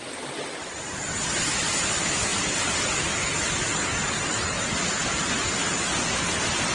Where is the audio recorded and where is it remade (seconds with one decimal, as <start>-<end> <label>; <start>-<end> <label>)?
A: 0.0-6.7 recorded